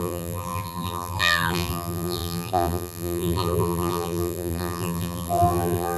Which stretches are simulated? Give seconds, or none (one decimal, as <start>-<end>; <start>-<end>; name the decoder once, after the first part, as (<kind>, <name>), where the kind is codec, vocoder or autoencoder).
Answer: 0.0-6.0 (vocoder, BigVGAN v2)